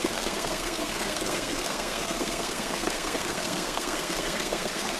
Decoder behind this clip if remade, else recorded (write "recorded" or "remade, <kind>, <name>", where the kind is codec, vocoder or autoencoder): remade, codec, SNAC